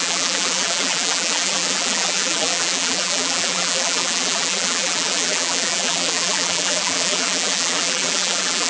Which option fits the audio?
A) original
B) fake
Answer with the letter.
B